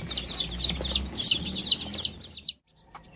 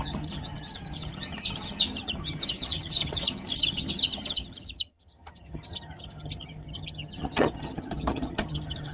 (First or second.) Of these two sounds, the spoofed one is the second